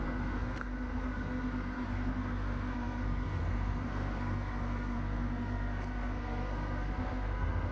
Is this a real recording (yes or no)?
no